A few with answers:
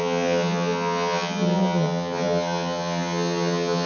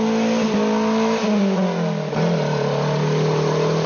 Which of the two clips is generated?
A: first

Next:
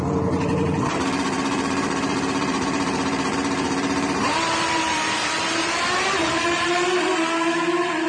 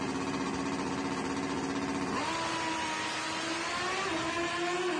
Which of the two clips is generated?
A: first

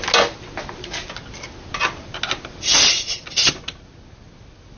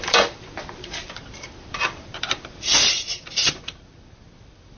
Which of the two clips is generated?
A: second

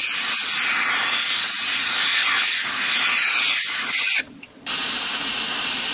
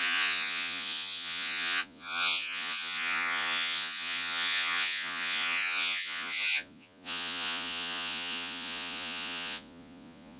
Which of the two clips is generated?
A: second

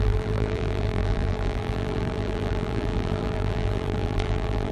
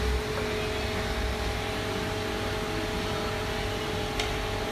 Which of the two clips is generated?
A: first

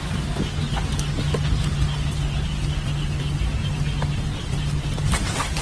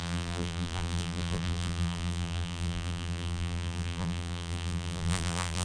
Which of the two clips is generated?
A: second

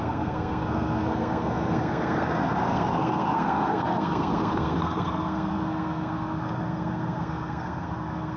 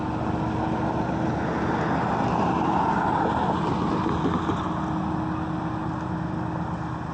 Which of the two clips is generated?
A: first